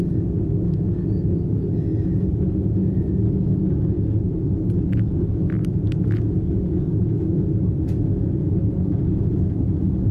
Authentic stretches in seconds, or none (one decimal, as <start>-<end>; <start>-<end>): 0.0-10.1

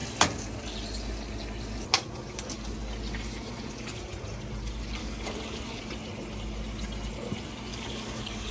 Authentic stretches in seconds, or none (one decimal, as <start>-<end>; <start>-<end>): 0.0-5.0; 5.8-7.7